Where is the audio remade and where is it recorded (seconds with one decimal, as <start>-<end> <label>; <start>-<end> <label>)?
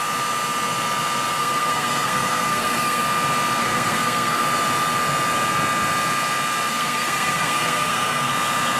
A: 0.0-1.4 recorded; 1.4-3.0 remade; 3.0-3.6 recorded; 3.6-4.4 remade; 4.4-6.7 recorded; 6.7-8.3 remade; 8.3-8.8 recorded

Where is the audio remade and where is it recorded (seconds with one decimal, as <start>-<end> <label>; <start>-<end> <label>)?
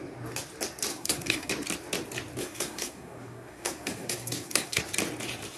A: 0.0-0.9 recorded; 0.9-1.5 remade; 1.5-2.4 recorded; 2.4-4.8 remade; 4.8-5.6 recorded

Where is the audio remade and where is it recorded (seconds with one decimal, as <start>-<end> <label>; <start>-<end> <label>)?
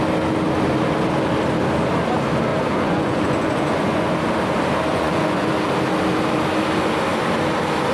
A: 0.0-2.5 recorded; 2.5-4.1 remade; 4.1-4.9 recorded; 4.9-5.5 remade; 5.5-7.9 recorded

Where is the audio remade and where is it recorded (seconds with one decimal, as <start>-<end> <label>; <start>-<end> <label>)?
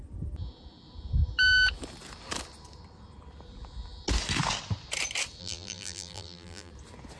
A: 0.0-5.4 recorded; 5.4-6.7 remade; 6.7-7.2 recorded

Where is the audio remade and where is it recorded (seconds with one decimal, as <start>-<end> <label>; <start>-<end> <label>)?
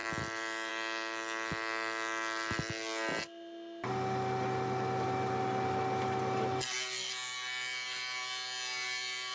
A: 0.0-9.3 recorded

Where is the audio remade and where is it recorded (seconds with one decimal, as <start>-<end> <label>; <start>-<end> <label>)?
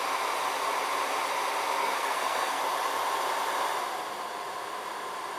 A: 0.0-1.8 recorded; 1.8-2.6 remade; 2.6-5.4 recorded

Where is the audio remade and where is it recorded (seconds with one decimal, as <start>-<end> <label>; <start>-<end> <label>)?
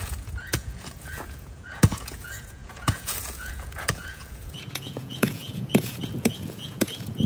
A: 0.0-7.3 remade